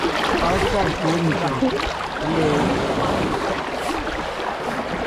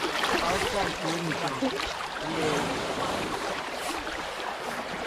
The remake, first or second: second